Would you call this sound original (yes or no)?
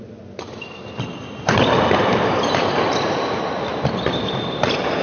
yes